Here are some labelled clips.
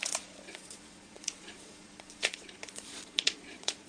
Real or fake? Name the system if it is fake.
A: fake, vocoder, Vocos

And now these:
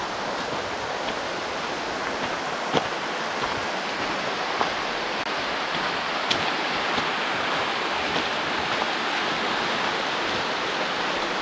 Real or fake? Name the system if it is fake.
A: real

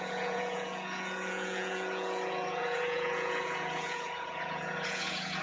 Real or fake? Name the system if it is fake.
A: fake, vocoder, Vocos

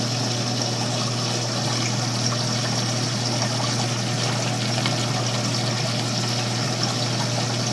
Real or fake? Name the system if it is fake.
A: real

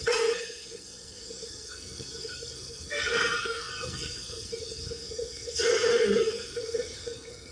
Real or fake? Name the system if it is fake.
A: fake, codec, SNAC